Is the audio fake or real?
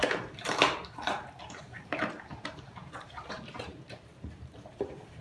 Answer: fake